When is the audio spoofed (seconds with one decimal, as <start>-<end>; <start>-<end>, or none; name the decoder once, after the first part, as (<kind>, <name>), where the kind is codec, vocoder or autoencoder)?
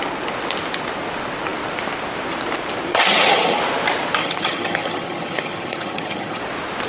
2.9-3.6 (vocoder, HiFi-GAN); 4.2-6.4